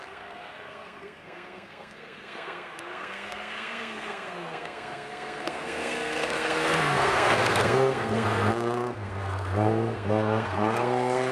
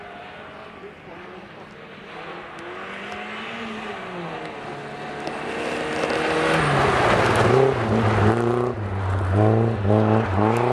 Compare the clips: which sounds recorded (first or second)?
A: second